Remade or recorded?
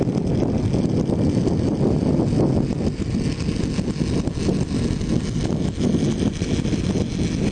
recorded